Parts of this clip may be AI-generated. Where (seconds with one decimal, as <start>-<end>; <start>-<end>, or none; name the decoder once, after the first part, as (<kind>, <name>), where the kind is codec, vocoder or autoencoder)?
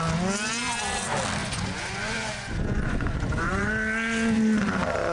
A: 1.4-3.7 (vocoder, Vocos)